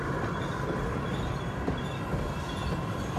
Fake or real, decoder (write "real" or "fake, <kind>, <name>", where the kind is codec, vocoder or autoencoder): real